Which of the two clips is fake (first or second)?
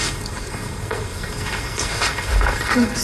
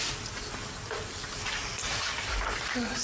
first